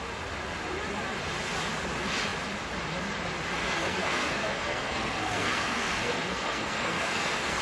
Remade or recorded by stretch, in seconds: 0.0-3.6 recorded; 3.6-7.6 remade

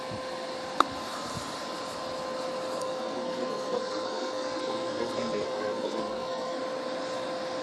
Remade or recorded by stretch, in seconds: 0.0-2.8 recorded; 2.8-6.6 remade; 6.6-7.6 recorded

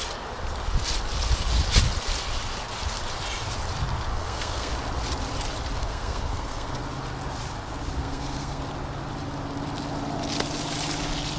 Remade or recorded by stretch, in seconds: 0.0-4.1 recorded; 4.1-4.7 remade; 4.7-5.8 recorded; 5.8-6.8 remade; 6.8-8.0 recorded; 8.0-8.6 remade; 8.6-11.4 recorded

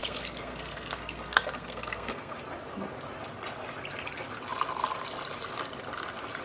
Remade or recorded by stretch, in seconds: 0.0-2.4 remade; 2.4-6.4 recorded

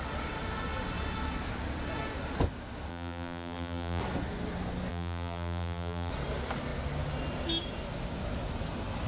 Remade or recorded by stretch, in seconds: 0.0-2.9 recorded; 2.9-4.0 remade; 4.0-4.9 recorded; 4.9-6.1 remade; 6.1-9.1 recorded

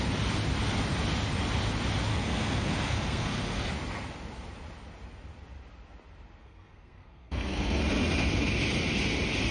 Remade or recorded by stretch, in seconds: 0.0-2.1 recorded; 2.1-3.7 remade; 3.7-6.4 recorded; 6.4-7.8 remade; 7.8-9.5 recorded

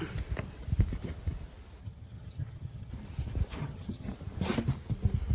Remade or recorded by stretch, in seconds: 0.0-1.8 recorded; 1.8-2.9 remade; 2.9-3.6 recorded; 3.6-4.1 remade; 4.1-5.3 recorded